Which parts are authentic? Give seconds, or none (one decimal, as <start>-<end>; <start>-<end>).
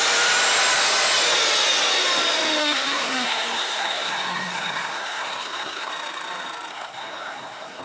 0.0-2.6; 5.9-6.7